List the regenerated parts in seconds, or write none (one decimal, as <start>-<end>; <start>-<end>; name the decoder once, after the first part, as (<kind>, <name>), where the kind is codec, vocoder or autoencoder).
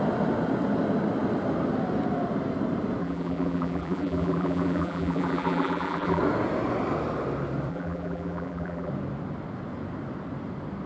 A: 3.0-6.2 (vocoder, BigVGAN v2); 7.7-8.9